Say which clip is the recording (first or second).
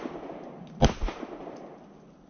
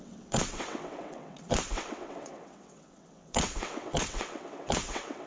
first